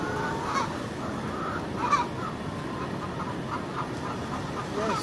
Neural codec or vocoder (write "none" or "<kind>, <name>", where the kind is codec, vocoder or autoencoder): none